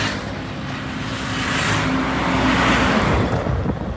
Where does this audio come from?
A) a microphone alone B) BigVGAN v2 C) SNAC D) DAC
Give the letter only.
A